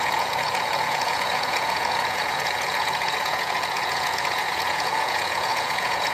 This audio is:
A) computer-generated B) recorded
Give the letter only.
A